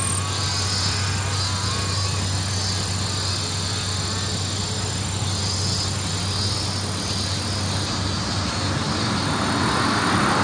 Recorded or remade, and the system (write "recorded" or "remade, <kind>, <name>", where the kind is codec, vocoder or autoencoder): recorded